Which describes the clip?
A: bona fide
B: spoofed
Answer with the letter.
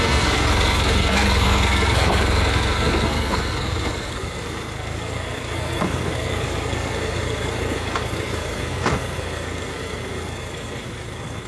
B